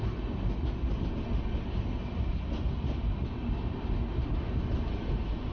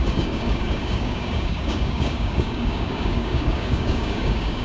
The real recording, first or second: first